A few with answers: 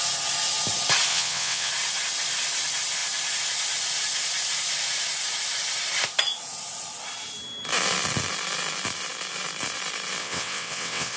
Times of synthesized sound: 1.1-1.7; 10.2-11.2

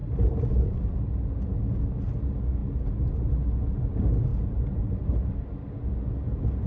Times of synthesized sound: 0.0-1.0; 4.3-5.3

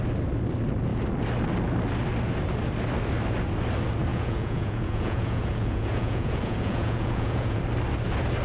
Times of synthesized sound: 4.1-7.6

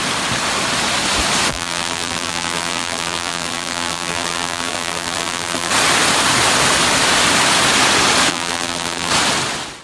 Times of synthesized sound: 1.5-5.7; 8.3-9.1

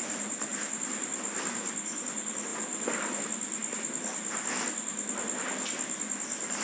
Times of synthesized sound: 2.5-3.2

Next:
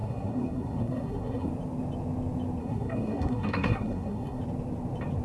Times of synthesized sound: 0.0-1.5; 2.6-4.4

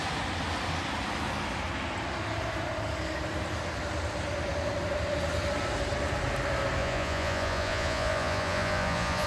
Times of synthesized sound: 6.8-9.3